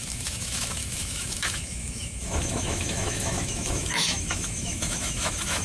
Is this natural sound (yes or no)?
no